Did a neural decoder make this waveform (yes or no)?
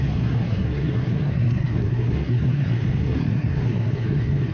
yes